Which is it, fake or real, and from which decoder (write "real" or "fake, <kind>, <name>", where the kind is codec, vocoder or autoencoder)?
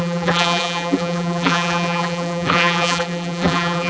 fake, vocoder, BigVGAN v2